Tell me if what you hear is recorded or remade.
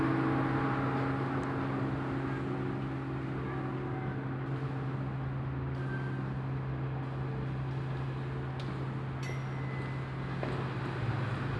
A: recorded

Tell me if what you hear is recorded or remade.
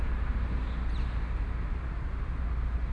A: recorded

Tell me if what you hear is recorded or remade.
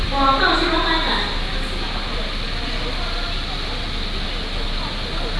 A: recorded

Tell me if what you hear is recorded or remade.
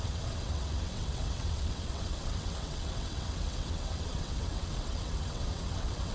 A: remade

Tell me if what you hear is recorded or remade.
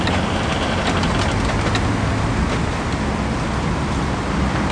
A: recorded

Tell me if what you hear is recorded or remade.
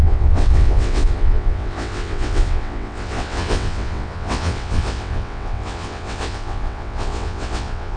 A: remade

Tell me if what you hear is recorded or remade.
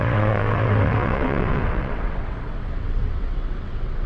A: remade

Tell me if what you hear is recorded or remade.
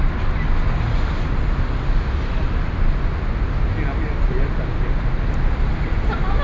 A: recorded